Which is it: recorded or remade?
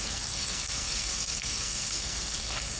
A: remade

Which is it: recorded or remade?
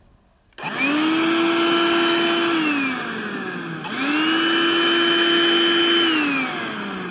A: recorded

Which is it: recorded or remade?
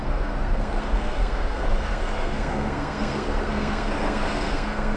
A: remade